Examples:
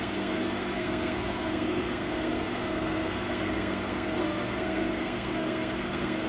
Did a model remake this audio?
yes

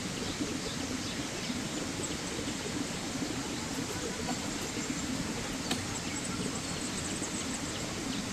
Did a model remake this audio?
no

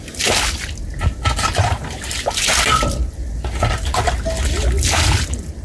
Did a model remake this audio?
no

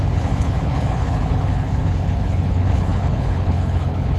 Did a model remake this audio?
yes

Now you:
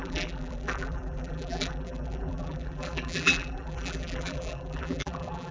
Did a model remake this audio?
yes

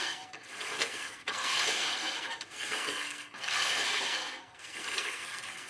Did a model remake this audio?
yes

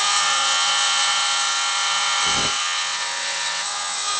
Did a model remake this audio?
yes